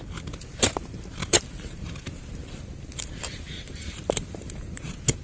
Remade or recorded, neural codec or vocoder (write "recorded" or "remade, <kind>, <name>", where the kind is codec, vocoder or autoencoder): remade, vocoder, BigVGAN v2